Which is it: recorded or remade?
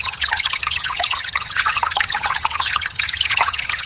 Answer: remade